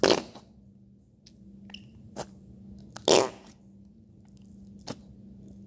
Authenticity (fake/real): real